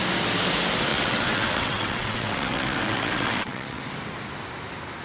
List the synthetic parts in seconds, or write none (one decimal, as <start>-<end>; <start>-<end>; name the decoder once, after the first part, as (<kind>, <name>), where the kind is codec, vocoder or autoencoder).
0.9-3.8 (vocoder, WaveNeXt)

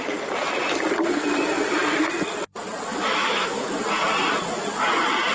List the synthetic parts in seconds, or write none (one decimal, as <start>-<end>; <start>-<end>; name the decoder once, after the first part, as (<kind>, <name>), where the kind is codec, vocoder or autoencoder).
2.9-3.8 (autoencoder, DAC-VAE)

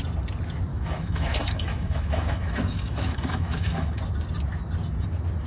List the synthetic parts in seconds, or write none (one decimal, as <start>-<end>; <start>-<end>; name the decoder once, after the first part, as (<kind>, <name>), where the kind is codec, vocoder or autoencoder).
0.7-4.0 (autoencoder, DAC-VAE)

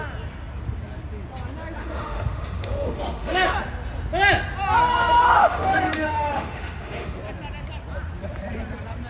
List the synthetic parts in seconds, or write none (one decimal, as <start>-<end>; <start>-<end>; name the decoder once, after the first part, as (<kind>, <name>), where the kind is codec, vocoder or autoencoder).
1.8-3.5 (autoencoder, DAC-VAE); 5.4-7.2